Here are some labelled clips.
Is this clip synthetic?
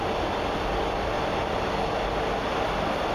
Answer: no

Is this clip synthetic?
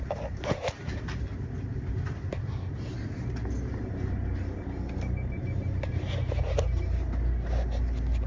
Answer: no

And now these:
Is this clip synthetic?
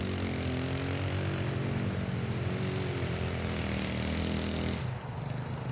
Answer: no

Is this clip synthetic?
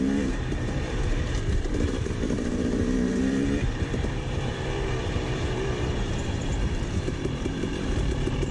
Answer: yes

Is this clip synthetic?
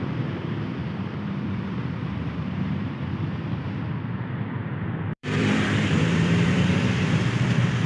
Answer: yes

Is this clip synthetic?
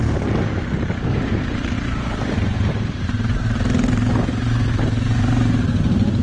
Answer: yes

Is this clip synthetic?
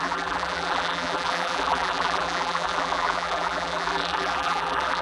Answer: yes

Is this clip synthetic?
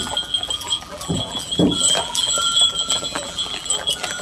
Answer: yes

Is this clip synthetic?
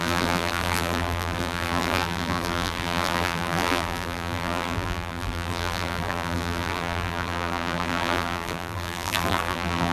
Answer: yes